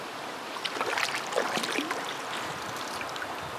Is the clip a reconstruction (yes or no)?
no